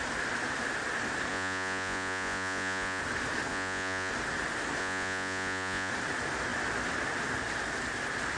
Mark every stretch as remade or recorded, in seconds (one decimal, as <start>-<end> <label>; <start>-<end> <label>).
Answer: 0.0-1.3 recorded; 1.3-3.0 remade; 3.0-3.5 recorded; 3.5-4.1 remade; 4.1-4.8 recorded; 4.8-5.9 remade; 5.9-8.4 recorded